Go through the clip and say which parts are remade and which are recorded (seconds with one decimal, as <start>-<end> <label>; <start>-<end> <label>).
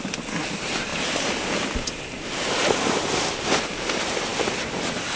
0.0-5.2 recorded